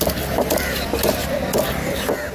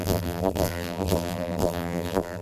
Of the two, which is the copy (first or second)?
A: second